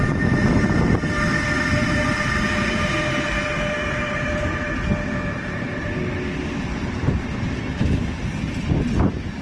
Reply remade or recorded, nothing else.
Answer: recorded